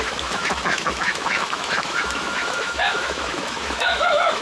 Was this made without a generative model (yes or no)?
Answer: no